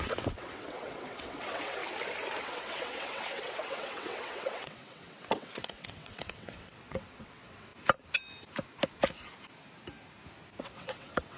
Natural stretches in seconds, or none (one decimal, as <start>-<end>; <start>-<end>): 1.8-2.4; 7.7-10.6